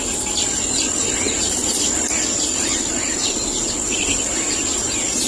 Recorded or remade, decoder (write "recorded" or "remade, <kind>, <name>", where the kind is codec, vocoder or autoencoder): recorded